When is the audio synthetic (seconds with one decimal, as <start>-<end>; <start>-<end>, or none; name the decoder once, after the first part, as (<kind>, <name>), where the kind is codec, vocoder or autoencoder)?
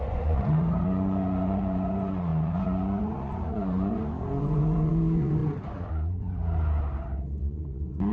0.0-6.4 (vocoder, Vocos); 7.4-8.1